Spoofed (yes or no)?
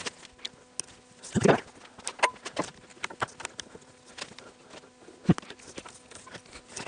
no